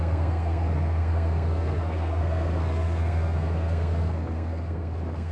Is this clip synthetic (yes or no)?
yes